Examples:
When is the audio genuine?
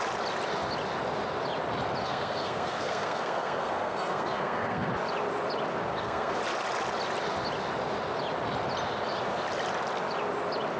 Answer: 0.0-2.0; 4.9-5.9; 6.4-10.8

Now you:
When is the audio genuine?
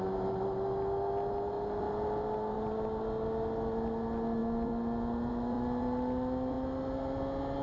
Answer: 0.0-7.6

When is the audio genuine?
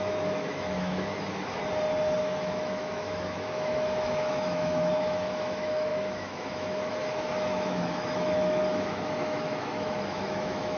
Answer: 1.6-2.2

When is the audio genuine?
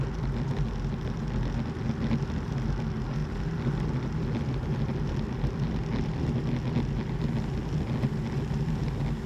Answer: 0.0-9.3